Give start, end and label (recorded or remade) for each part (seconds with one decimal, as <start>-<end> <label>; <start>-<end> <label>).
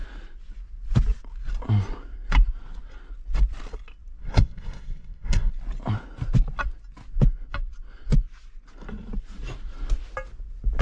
0.0-4.2 recorded; 4.2-5.5 remade; 5.5-10.8 recorded